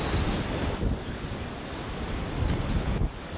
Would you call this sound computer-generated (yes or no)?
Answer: no